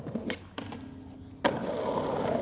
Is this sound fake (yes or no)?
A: no